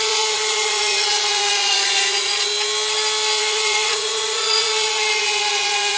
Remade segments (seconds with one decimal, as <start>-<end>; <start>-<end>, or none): 0.0-2.5; 3.4-6.0